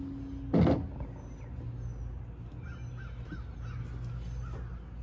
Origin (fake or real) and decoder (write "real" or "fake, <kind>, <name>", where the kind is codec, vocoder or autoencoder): real